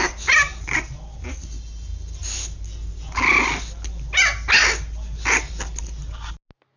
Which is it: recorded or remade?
recorded